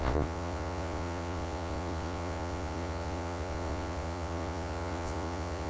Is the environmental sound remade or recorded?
remade